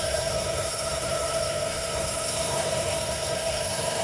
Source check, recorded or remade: remade